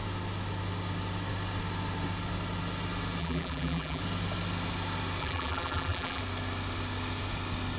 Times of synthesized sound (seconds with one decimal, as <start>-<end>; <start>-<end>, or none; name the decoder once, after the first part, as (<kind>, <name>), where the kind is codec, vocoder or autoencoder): 3.2-4.0 (vocoder, BigVGAN v2); 5.2-6.2